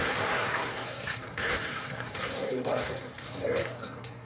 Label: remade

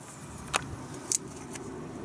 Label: recorded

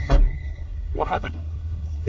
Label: remade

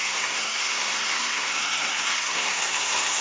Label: remade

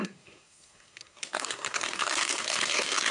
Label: remade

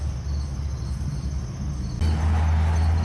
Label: recorded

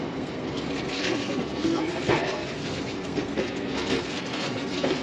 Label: remade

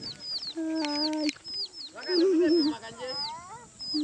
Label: recorded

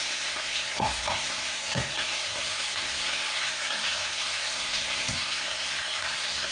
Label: remade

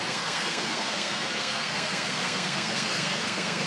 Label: remade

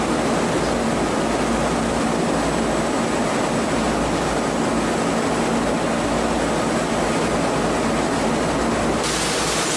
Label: recorded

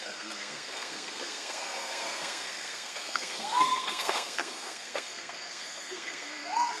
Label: remade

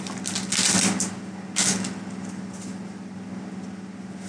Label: recorded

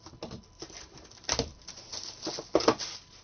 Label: recorded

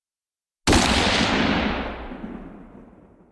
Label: recorded